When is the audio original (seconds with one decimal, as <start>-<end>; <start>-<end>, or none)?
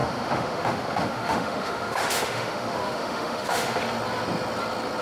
3.8-5.0